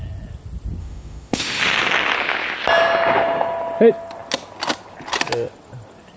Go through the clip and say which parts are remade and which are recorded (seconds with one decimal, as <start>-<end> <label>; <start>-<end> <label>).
0.0-0.8 recorded; 0.8-1.6 remade; 1.6-6.2 recorded